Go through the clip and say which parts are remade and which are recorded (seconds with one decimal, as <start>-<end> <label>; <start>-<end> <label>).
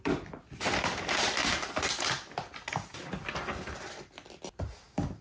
0.0-5.2 recorded